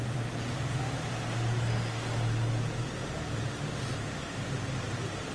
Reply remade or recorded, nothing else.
recorded